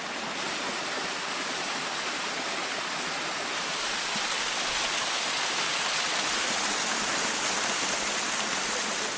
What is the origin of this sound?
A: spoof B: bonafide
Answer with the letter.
B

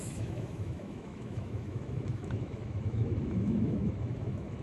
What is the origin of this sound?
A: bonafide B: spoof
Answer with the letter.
B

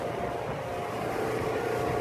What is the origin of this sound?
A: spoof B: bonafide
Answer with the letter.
B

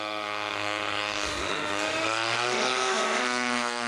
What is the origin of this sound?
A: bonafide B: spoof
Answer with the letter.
B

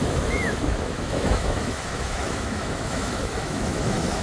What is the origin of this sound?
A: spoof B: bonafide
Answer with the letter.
A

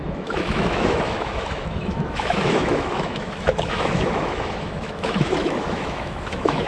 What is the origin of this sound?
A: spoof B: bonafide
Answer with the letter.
A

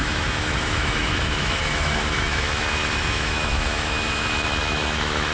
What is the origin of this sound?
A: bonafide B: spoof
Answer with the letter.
B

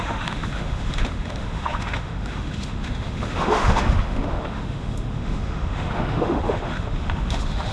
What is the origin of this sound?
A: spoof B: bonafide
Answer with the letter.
A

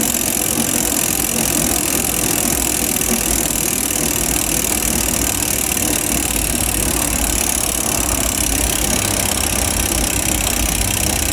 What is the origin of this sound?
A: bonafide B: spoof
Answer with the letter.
A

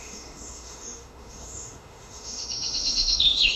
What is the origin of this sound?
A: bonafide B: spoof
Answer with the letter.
B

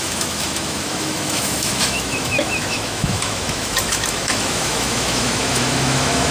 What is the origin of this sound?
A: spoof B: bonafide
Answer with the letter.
A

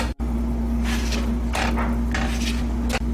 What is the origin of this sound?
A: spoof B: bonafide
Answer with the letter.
B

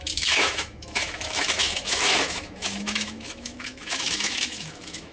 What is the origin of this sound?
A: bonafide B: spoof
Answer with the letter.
B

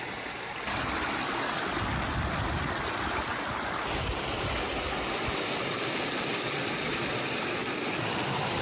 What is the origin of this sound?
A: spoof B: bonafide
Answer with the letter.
B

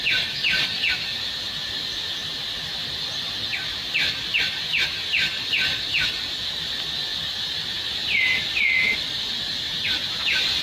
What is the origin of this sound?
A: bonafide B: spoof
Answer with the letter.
A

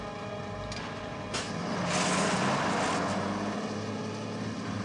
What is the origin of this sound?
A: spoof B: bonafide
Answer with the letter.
B